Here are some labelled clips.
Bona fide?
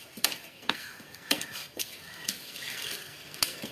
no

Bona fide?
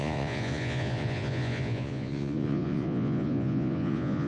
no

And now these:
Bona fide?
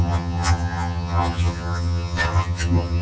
no